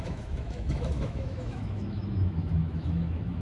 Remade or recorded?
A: remade